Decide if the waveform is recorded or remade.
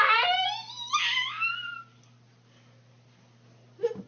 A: recorded